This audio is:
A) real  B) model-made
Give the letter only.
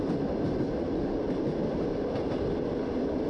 A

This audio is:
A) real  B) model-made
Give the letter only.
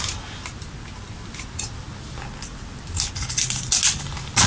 A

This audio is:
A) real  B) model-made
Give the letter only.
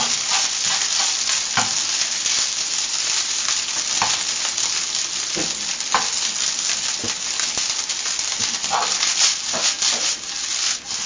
A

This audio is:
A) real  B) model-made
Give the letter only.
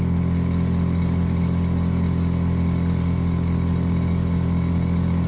A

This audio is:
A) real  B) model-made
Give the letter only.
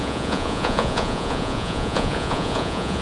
B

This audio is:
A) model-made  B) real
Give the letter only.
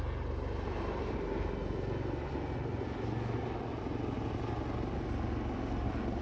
B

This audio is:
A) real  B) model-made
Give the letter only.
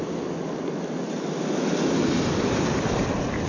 A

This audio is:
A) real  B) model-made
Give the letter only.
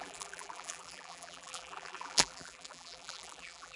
B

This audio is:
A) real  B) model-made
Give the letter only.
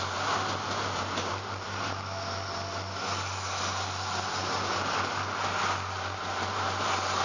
A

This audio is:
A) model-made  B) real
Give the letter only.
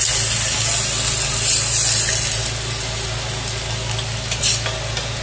B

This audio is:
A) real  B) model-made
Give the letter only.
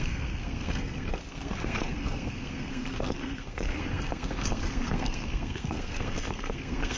B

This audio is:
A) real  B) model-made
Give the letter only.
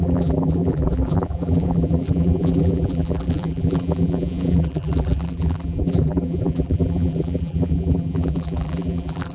B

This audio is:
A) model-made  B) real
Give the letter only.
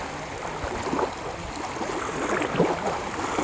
B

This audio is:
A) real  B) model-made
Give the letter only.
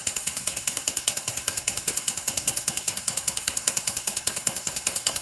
B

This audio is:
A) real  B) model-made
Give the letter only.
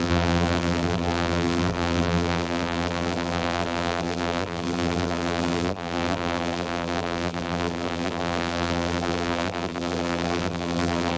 B